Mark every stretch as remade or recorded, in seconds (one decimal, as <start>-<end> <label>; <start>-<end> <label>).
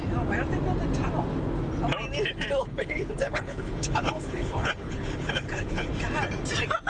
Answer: 0.0-2.7 recorded; 2.7-5.9 remade; 5.9-6.9 recorded